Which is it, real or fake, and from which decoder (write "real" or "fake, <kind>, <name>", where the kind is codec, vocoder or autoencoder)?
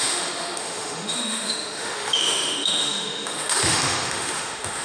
fake, autoencoder, DAC-VAE